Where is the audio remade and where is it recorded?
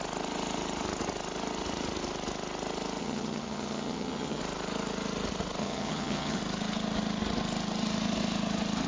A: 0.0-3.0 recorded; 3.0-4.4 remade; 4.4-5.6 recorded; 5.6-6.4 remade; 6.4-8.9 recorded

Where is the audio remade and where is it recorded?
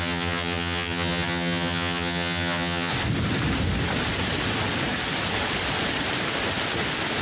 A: 0.0-2.9 remade; 2.9-7.2 recorded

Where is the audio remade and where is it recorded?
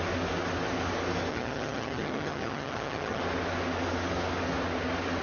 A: 0.0-1.3 recorded; 1.3-3.2 remade; 3.2-5.2 recorded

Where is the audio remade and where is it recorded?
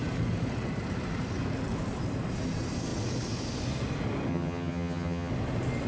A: 0.0-4.3 recorded; 4.3-5.3 remade; 5.3-5.9 recorded